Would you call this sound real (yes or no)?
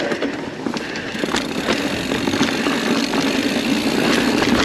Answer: yes